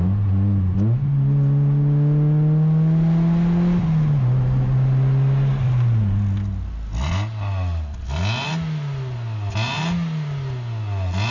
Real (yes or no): yes